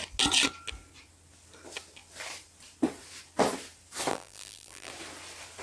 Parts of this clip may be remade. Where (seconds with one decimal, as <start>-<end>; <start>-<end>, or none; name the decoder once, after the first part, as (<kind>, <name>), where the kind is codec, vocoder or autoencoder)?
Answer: 4.1-4.9 (vocoder, BigVGAN v2)